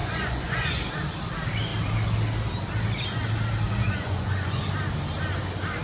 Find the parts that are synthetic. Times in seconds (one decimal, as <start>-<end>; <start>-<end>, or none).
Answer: 0.0-0.8; 3.8-4.6